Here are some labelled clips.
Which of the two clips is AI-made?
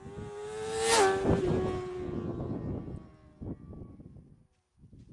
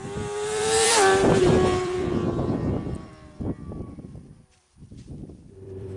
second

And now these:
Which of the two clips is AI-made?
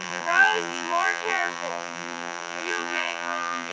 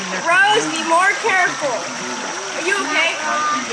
first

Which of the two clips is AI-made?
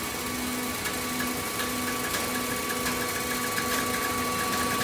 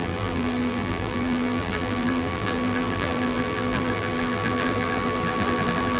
second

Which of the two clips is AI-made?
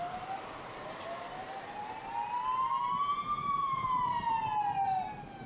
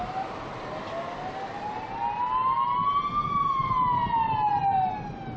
first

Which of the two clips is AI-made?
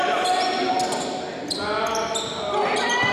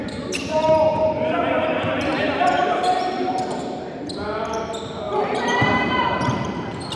second